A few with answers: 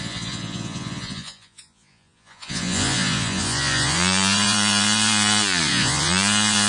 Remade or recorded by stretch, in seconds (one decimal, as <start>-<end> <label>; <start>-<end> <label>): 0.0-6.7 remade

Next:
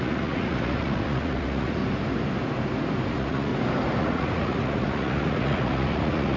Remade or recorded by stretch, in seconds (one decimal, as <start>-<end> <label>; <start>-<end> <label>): 0.0-1.8 remade; 1.8-3.1 recorded; 3.1-3.5 remade; 3.5-4.0 recorded; 4.0-6.4 remade

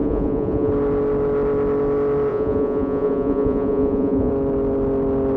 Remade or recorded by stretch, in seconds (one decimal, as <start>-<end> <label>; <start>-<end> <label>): 0.0-0.7 remade; 0.7-2.3 recorded; 2.3-4.3 remade; 4.3-5.4 recorded